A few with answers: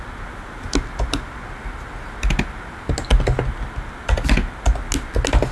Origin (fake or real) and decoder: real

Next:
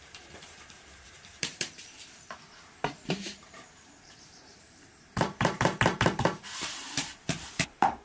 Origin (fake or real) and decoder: fake, vocoder, BigVGAN v2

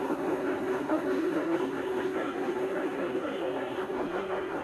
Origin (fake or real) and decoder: fake, codec, SNAC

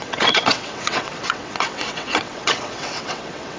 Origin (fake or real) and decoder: fake, vocoder, WaveNeXt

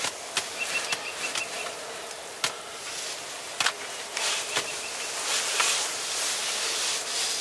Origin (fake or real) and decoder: real